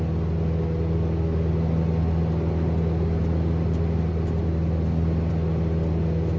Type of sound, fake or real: real